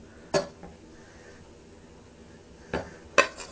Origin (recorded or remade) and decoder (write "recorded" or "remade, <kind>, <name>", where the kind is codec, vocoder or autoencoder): recorded